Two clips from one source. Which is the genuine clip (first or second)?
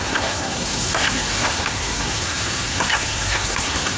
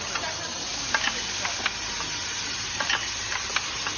second